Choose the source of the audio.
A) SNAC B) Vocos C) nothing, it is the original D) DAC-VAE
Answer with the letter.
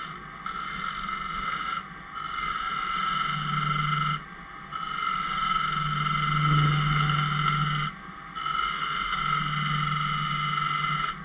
C